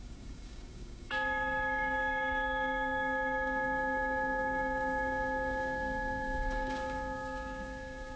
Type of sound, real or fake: fake